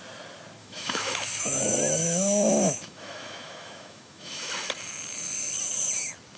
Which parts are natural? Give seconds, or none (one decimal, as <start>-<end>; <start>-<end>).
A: 0.0-0.6; 1.6-2.0; 4.5-6.4